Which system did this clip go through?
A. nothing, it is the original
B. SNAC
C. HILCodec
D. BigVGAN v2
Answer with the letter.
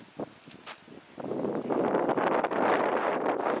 A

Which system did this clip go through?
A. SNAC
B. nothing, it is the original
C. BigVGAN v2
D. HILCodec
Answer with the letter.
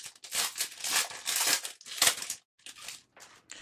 B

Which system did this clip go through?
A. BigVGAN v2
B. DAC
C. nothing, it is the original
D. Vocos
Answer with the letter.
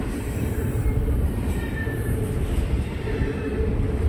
A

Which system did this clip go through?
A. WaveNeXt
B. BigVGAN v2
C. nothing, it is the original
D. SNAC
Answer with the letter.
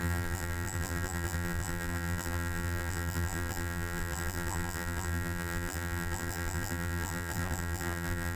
B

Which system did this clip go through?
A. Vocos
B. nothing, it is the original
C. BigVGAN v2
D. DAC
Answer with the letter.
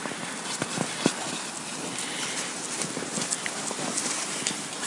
B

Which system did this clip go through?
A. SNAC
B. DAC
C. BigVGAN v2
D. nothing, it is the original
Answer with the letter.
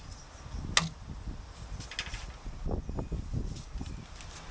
D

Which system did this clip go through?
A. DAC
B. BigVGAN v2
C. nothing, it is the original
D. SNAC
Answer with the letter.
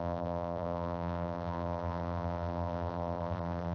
B